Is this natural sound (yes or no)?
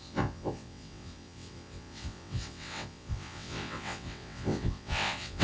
no